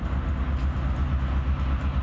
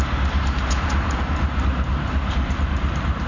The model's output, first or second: second